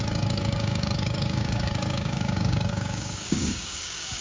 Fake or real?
fake